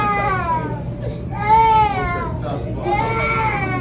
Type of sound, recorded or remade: recorded